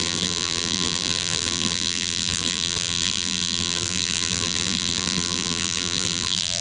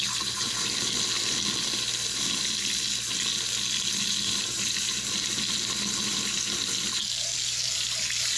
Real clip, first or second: second